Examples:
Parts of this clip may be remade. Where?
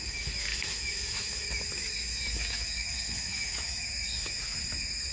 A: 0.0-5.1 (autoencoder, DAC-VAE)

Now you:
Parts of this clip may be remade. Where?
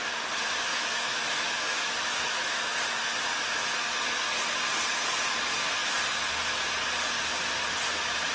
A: 0.7-2.8 (autoencoder, DAC-VAE)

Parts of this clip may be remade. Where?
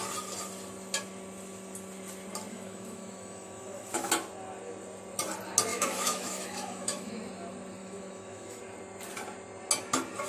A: 2.5-4.1 (autoencoder, DAC-VAE); 5.7-7.1; 7.8-8.6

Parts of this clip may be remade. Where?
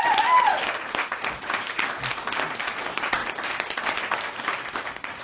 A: none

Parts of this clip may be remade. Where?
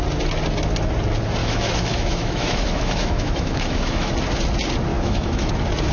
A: 1.4-4.1 (autoencoder, DAC-VAE); 4.9-5.5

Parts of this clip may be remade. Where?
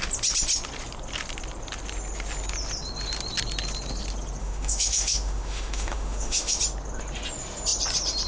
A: 4.4-6.6 (autoencoder, DAC-VAE)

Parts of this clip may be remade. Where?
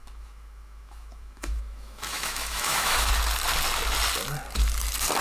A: 0.0-3.1 (autoencoder, DAC-VAE)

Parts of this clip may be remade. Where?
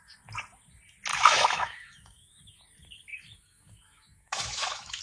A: 1.1-2.6 (autoencoder, DAC-VAE); 3.1-5.0